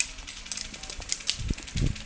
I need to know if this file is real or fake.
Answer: real